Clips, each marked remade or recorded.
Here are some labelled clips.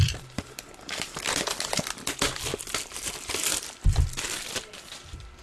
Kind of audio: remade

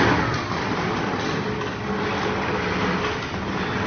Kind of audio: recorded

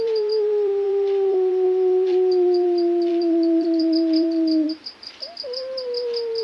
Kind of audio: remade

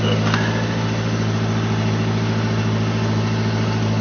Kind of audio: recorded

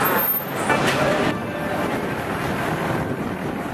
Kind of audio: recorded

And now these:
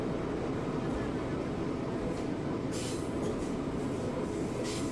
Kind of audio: recorded